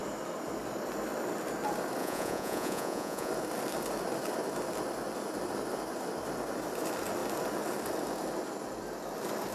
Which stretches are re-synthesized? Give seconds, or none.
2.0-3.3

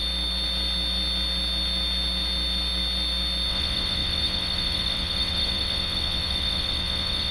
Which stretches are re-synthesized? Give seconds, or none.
3.5-7.3